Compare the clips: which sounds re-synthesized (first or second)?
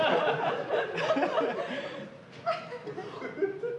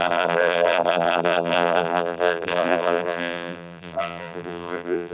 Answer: second